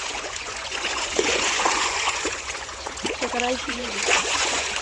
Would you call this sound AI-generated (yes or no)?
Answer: yes